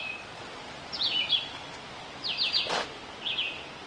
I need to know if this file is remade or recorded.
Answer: recorded